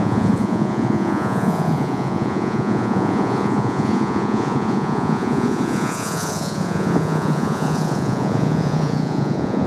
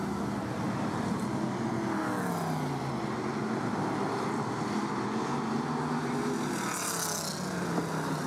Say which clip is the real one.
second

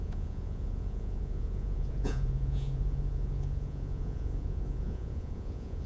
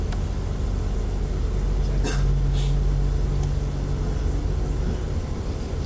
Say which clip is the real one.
second